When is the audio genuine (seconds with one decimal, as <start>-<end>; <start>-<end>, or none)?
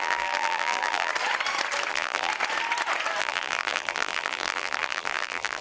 1.1-1.9; 2.3-3.2